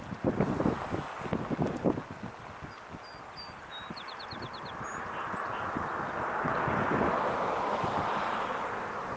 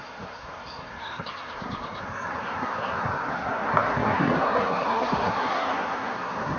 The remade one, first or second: second